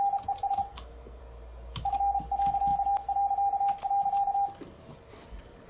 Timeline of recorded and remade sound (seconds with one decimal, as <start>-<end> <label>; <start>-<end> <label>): 0.0-0.7 recorded; 0.7-1.2 remade; 1.2-5.7 recorded

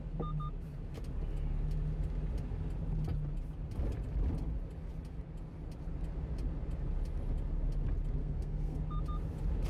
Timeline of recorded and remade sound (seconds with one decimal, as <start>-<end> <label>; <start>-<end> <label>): 0.0-8.2 recorded; 8.2-8.8 remade; 8.8-9.7 recorded